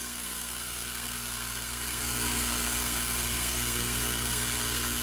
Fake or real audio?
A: fake